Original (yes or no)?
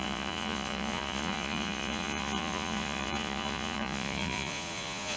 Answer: no